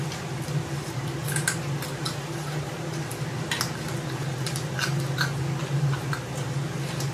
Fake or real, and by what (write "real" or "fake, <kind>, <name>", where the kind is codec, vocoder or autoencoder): real